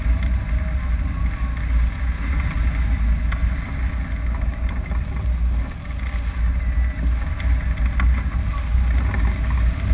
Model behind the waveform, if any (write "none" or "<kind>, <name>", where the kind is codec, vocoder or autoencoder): none